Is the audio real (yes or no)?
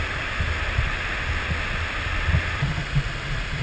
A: yes